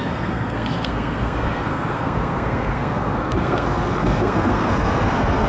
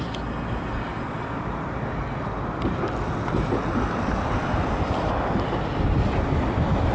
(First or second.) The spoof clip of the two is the first